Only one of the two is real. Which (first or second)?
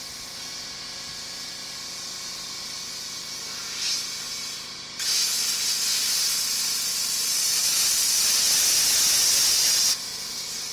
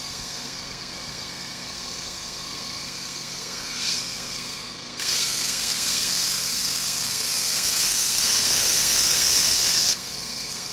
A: first